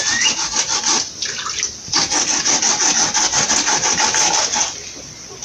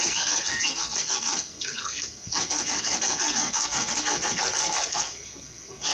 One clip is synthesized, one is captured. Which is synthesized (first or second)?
second